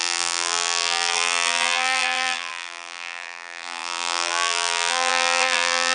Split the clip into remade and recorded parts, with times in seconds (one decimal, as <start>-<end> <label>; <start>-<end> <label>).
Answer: 0.0-5.9 remade